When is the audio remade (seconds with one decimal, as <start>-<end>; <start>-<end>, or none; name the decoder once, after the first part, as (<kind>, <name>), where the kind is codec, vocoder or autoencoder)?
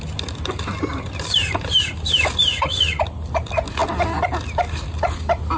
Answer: 2.5-3.0 (vocoder, WaveNeXt)